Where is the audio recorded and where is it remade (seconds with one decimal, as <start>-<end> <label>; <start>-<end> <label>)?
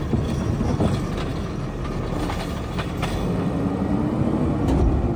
0.0-5.2 recorded